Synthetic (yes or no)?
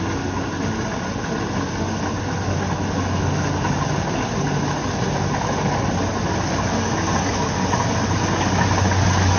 no